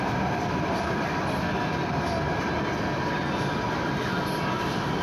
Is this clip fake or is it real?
real